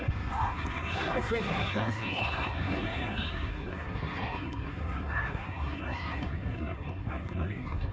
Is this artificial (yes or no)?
yes